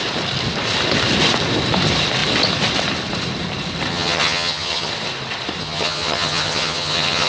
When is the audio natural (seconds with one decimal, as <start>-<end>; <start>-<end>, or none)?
0.0-3.9; 4.9-5.6